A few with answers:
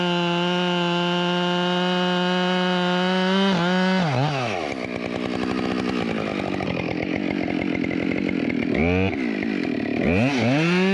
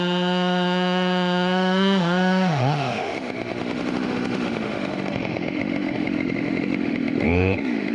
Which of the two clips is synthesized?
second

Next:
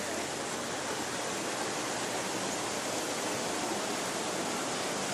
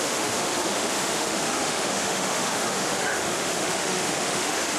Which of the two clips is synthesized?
second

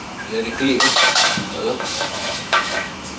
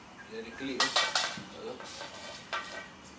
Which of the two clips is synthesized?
first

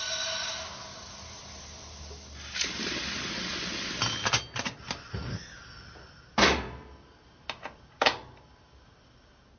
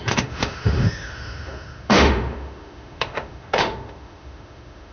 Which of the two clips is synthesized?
second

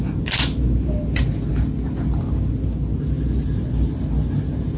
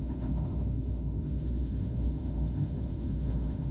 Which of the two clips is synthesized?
second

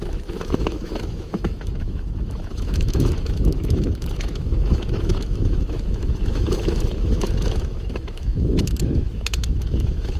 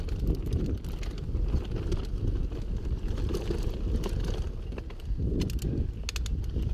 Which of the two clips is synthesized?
first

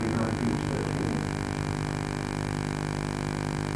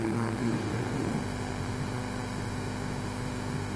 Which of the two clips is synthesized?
second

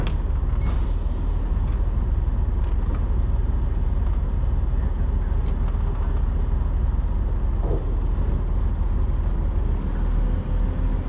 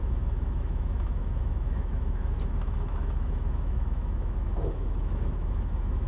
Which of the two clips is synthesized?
second